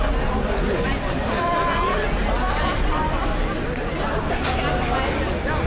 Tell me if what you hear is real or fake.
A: real